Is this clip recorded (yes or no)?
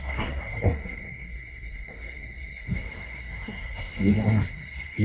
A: no